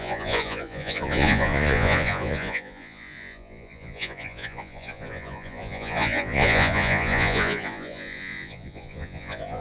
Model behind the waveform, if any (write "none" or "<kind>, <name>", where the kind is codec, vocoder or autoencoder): vocoder, Vocos